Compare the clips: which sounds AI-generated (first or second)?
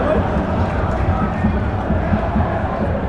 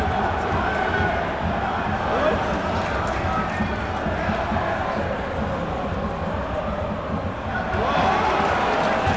first